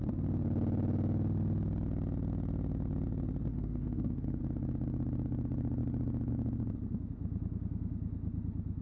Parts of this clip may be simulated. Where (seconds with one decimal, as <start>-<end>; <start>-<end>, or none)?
3.5-4.4